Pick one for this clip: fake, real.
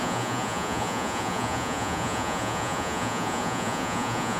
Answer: fake